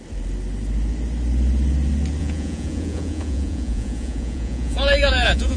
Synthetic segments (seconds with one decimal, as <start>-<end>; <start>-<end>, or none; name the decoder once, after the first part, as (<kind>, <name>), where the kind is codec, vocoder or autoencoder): 2.2-5.6 (vocoder, Vocos)